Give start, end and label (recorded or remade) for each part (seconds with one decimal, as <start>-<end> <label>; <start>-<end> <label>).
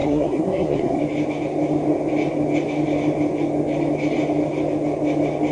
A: 0.0-1.0 remade; 1.0-5.5 recorded